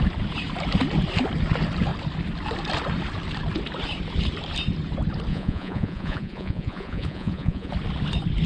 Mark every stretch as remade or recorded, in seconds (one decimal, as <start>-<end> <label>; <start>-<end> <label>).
0.0-5.3 recorded; 5.3-7.7 remade; 7.7-8.5 recorded